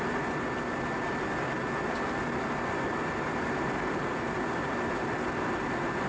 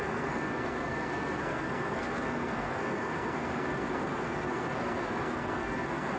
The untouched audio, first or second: first